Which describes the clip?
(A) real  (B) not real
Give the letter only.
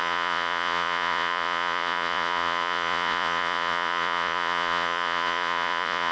B